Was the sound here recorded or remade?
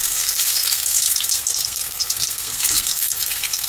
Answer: remade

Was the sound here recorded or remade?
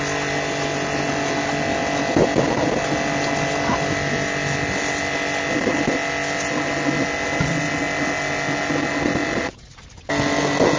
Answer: recorded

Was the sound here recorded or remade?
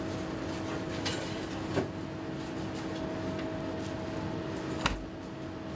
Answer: recorded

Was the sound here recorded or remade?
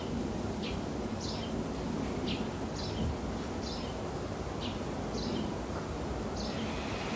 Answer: recorded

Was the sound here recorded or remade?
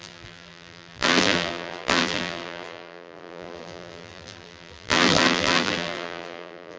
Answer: remade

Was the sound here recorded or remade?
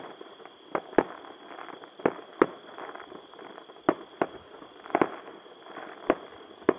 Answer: recorded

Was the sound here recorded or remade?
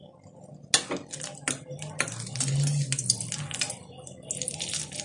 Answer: recorded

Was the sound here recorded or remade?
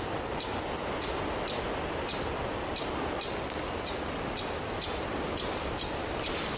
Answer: recorded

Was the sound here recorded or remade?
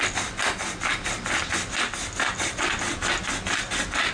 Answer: recorded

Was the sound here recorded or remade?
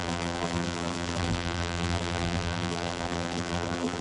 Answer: remade